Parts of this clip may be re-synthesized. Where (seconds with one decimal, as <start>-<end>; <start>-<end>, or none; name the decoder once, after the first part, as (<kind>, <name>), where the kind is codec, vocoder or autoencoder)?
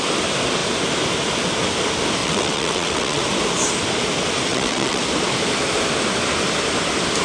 2.2-3.2 (vocoder, WaveNeXt); 4.5-5.0